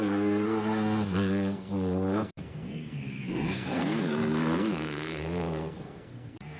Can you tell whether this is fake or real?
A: fake